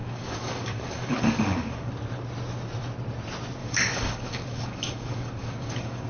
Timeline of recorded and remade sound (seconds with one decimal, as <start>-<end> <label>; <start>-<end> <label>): 0.0-1.9 remade; 1.9-3.6 recorded; 3.6-6.1 remade